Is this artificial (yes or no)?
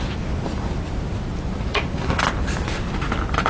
no